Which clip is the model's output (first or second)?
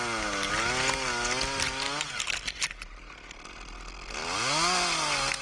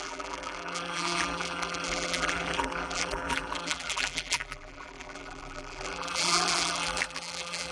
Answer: second